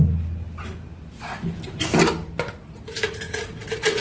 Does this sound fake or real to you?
real